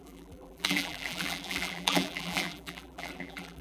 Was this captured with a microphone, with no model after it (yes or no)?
no